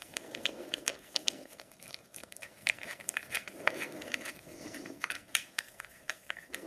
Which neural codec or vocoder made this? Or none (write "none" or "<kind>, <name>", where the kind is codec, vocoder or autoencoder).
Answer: codec, SNAC